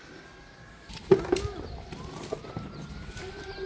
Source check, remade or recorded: recorded